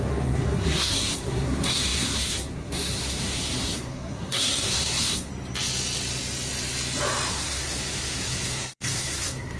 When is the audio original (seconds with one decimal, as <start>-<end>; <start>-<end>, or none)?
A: 5.3-7.3